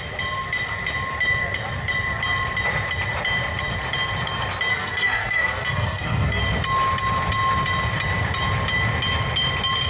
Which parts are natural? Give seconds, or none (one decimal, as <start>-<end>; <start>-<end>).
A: 0.0-4.7; 6.4-9.9